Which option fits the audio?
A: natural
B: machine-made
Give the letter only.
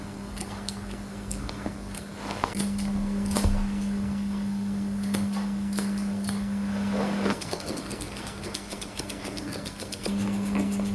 B